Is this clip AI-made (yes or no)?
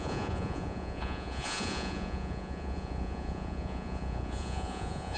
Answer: yes